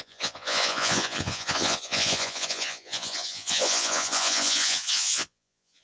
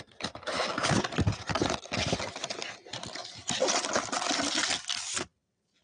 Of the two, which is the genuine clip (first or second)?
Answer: second